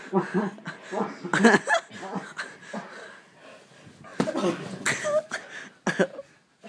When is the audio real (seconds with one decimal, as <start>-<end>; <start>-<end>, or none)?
0.0-6.7